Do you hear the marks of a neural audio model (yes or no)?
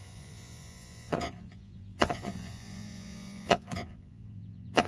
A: yes